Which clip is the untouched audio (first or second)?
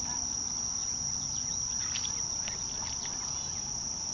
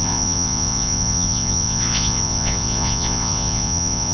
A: first